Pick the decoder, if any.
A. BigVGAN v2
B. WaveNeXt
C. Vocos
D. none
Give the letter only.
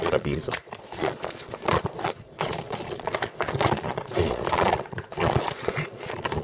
C